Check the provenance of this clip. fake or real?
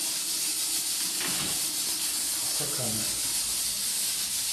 real